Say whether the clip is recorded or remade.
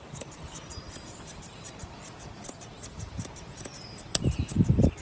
remade